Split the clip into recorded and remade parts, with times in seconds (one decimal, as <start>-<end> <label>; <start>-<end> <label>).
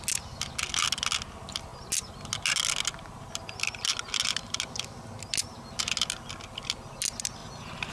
0.0-7.9 recorded